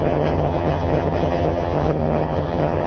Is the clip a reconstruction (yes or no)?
yes